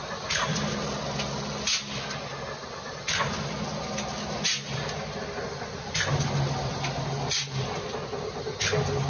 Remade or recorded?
recorded